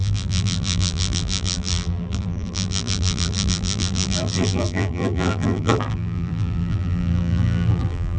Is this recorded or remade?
remade